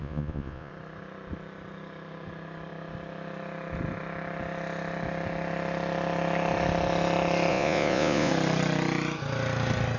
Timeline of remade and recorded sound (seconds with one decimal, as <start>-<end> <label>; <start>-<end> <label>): 0.0-0.7 remade; 0.7-7.5 recorded; 7.5-8.3 remade; 8.3-10.0 recorded